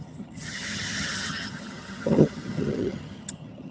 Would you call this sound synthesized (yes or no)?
yes